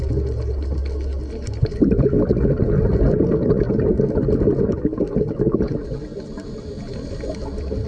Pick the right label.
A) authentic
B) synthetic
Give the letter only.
A